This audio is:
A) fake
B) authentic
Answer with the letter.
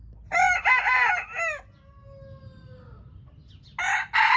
B